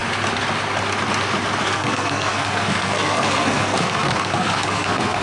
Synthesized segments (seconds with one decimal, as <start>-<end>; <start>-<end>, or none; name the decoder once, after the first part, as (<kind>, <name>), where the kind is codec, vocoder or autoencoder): 1.6-5.2 (codec, SNAC)